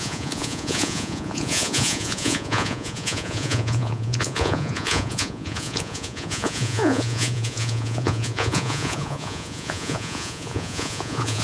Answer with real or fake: fake